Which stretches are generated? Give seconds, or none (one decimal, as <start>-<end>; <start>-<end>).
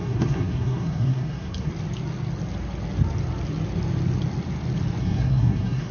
0.0-1.7; 5.0-5.9